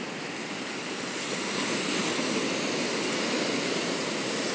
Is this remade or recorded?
recorded